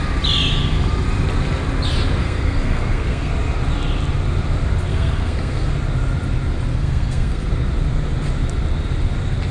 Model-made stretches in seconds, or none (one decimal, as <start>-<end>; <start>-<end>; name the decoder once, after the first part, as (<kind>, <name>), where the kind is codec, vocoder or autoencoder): 2.2-3.3 (codec, SNAC); 4.9-5.7; 6.7-7.5